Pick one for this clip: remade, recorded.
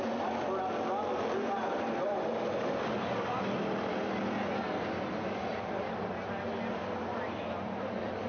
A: remade